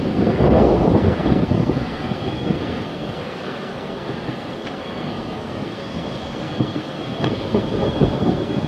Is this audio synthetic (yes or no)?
yes